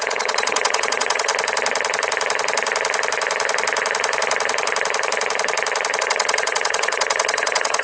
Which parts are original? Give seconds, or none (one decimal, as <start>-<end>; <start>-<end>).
1.3-6.0